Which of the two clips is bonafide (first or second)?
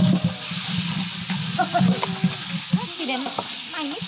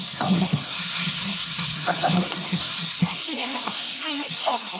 first